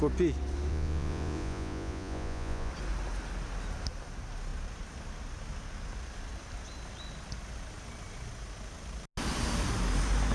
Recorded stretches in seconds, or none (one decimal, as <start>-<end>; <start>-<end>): 0.0-0.7; 2.7-10.3